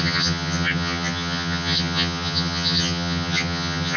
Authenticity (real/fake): fake